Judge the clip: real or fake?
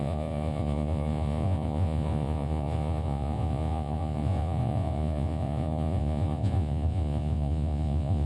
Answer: fake